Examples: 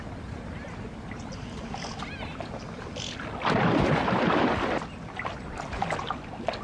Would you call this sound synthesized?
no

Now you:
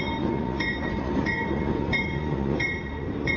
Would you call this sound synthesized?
yes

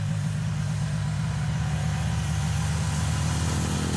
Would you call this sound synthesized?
no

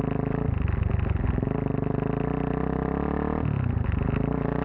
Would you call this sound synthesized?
no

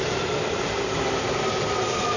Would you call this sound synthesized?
no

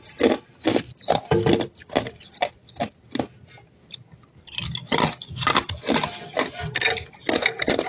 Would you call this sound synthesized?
no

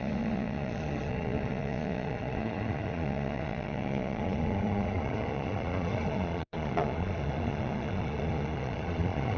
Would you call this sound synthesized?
yes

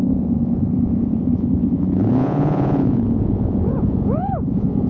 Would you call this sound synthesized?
yes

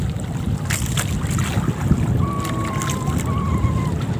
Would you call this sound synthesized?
no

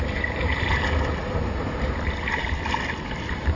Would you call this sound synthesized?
no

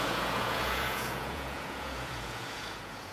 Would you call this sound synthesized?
yes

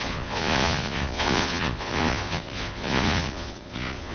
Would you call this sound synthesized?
yes